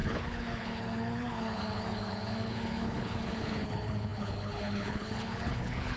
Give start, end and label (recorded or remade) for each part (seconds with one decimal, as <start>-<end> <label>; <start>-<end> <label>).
0.0-6.0 remade